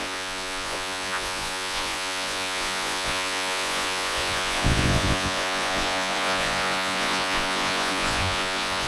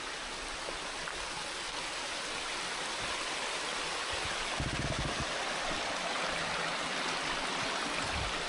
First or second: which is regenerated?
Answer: first